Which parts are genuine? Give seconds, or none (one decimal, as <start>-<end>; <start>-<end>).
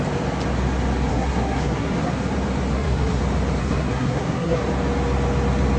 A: 0.0-1.1; 2.1-2.7; 3.2-3.6; 4.6-5.8